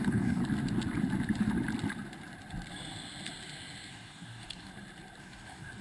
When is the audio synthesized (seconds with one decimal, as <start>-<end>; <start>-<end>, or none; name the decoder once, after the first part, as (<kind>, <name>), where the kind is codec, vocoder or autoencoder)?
0.0-0.4 (codec, DAC); 3.9-4.7; 5.2-5.8